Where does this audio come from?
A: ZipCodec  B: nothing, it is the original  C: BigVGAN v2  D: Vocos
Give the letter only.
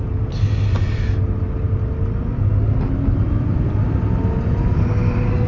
B